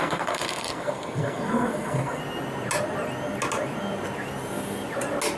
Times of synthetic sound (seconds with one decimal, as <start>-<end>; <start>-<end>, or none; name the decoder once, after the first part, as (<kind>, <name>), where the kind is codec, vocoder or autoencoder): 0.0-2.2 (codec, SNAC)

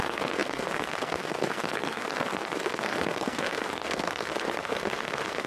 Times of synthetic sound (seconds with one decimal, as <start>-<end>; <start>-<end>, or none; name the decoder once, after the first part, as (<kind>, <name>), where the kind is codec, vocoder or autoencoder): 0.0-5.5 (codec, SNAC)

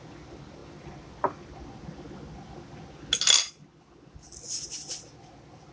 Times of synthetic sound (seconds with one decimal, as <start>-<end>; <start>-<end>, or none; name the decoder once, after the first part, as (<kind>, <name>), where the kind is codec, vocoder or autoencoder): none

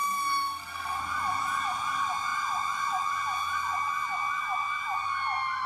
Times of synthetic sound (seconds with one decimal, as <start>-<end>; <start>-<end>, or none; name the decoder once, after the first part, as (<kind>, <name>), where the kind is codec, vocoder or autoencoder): 0.0-1.0 (codec, SNAC)

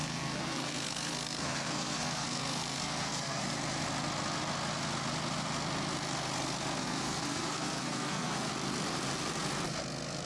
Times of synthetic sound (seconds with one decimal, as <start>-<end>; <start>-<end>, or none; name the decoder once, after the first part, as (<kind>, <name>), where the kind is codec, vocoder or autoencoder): 0.0-3.4 (codec, SNAC); 6.8-8.5

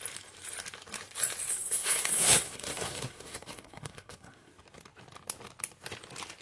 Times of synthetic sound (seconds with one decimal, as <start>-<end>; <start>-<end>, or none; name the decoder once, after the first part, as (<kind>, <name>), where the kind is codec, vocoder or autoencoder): 1.5-4.5 (codec, SNAC)

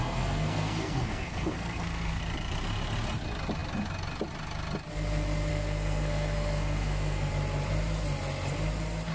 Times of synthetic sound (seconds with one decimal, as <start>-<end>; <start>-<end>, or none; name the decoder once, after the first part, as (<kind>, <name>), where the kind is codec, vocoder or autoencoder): 0.0-2.2 (codec, SNAC); 5.5-7.3

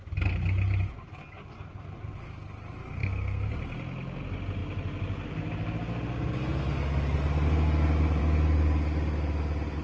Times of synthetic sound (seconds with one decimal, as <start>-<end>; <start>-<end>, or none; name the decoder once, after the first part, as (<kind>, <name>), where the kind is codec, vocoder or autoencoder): 3.0-3.5 (codec, SNAC)